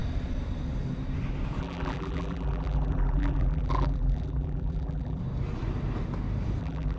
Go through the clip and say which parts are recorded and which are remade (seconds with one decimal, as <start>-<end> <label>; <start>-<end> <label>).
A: 0.0-1.6 recorded; 1.6-5.2 remade; 5.2-6.6 recorded; 6.6-7.0 remade